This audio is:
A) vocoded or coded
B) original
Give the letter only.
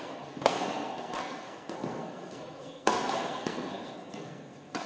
A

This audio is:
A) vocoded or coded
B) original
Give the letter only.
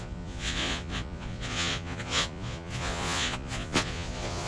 A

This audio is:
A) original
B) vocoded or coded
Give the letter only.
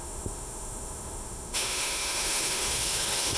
B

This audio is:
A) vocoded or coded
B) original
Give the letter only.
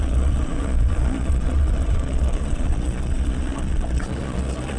A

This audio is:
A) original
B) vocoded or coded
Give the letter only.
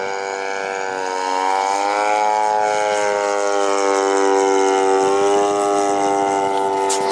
A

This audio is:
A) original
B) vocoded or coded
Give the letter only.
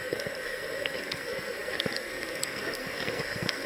B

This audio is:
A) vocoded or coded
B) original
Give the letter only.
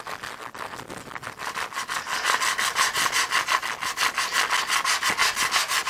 B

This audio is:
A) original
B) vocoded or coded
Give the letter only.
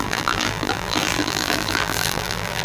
B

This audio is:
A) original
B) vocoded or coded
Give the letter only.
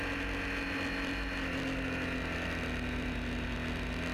A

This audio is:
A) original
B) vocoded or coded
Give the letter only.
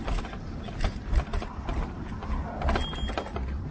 A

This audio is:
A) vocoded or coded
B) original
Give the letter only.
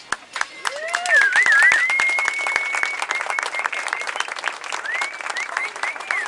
B